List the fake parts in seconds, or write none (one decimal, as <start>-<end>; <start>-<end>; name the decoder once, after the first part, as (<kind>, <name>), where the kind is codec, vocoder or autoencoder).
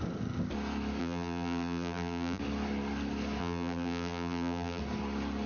1.0-2.4 (vocoder, BigVGAN v2); 3.4-4.8